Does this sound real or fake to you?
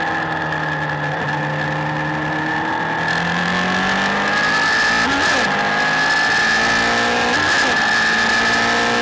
real